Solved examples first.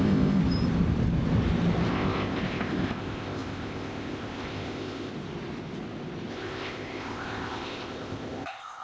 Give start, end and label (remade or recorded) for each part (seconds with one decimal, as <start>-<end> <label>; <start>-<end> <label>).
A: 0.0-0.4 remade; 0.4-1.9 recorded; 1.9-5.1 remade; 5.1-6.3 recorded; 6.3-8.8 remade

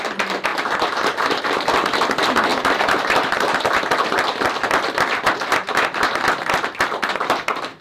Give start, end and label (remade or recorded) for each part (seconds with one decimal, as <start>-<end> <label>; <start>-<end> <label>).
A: 0.0-7.8 recorded

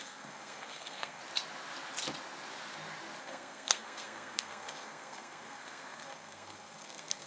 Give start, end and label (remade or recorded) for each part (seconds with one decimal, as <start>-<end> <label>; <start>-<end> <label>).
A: 0.0-1.2 remade; 1.2-3.2 recorded; 3.2-7.3 remade

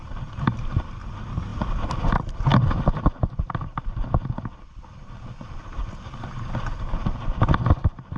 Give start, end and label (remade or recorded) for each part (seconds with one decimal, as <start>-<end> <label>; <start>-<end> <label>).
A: 0.0-1.5 recorded; 1.5-2.1 remade; 2.1-2.5 recorded; 2.5-3.2 remade; 3.2-8.2 recorded

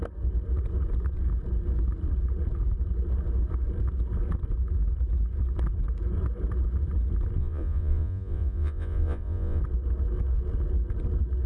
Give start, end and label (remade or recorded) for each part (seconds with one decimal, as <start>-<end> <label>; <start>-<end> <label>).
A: 0.0-7.4 recorded; 7.4-9.6 remade; 9.6-11.5 recorded

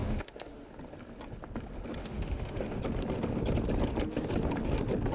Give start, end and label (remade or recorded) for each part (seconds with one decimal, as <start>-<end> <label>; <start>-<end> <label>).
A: 0.0-0.7 remade; 0.7-2.0 recorded; 2.0-2.8 remade; 2.8-5.1 recorded

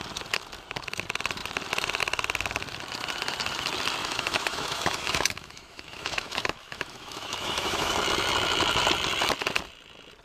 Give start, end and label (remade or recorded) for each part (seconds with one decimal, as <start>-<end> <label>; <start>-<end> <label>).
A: 0.0-4.0 recorded; 4.0-7.9 remade; 7.9-10.2 recorded